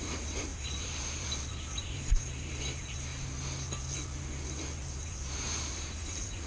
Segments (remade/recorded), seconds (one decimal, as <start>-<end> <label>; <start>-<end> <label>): 0.0-3.1 remade; 3.1-4.9 recorded; 4.9-6.5 remade